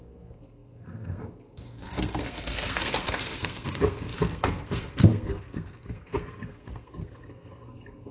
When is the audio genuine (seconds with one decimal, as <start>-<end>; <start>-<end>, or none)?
none